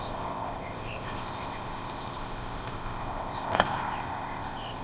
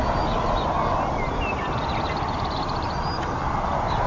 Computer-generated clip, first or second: first